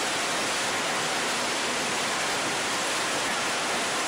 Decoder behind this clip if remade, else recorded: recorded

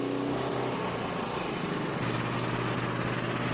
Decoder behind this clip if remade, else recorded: recorded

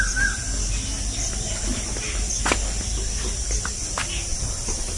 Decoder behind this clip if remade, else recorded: recorded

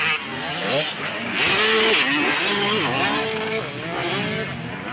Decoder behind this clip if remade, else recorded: recorded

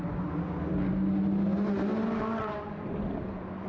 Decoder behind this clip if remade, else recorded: recorded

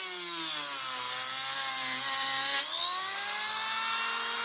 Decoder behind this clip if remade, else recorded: recorded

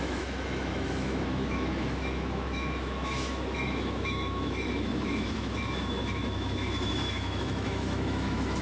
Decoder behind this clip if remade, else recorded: remade, autoencoder, DAC-VAE